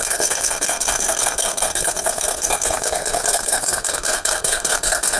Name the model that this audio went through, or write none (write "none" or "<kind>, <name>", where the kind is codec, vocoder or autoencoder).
codec, SNAC